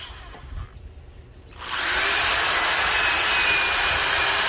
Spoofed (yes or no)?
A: no